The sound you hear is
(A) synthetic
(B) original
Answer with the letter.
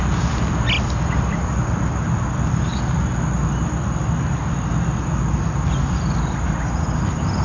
B